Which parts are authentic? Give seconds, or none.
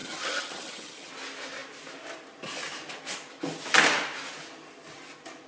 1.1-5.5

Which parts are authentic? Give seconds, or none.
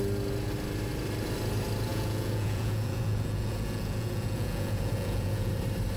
0.0-1.9; 5.5-6.0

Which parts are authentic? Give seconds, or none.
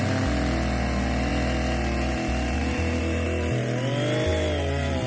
0.0-5.1